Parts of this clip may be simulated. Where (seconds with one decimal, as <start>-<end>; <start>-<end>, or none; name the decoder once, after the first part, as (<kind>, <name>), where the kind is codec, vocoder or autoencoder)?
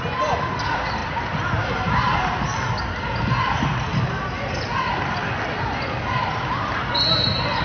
0.0-1.0 (vocoder, BigVGAN v2); 5.6-7.6